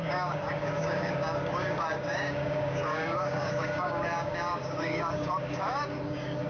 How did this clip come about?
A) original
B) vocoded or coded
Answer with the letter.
B